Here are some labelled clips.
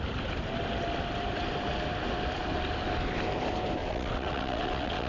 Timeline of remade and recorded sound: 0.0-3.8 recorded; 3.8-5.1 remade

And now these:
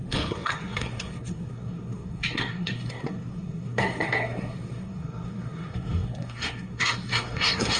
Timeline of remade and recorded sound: 0.0-7.8 remade

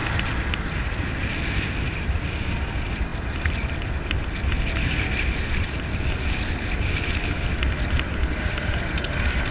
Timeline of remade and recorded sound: 0.0-9.5 recorded

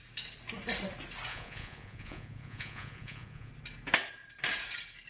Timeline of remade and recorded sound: 0.0-1.3 recorded; 1.3-3.5 remade; 3.5-5.1 recorded

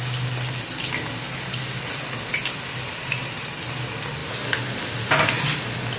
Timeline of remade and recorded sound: 0.0-6.0 recorded

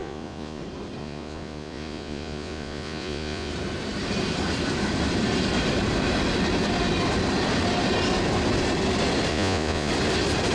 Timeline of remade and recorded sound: 0.0-0.6 remade; 0.6-1.0 recorded; 1.0-3.5 remade; 3.5-9.3 recorded; 9.3-9.9 remade; 9.9-10.5 recorded

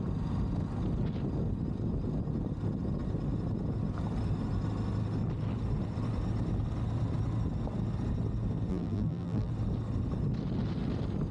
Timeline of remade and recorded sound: 0.0-8.7 recorded; 8.7-9.5 remade; 9.5-11.3 recorded